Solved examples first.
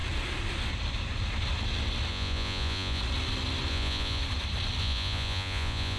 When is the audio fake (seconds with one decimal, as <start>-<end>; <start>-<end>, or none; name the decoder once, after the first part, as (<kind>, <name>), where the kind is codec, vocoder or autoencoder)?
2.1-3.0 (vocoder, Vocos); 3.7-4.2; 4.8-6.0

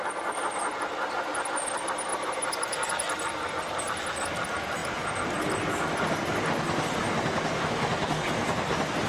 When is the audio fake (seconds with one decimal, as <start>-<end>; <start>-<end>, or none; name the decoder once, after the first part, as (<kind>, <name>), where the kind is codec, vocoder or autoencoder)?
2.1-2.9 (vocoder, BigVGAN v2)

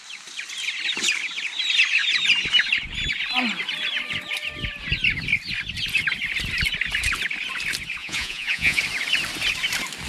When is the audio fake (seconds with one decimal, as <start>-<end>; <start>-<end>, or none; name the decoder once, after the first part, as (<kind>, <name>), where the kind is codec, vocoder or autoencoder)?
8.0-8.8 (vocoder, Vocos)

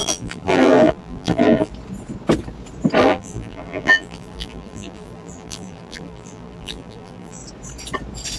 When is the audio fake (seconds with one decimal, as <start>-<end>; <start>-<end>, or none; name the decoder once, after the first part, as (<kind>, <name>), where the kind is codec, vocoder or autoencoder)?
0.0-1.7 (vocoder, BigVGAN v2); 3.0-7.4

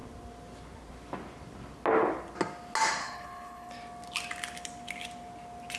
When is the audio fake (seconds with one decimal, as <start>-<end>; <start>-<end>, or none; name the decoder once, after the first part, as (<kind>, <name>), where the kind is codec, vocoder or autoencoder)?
3.0-3.7 (codec, HILCodec)

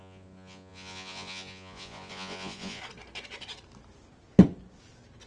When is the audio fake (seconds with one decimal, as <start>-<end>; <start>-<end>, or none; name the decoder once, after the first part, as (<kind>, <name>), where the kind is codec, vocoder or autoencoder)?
0.0-2.8 (vocoder, Vocos)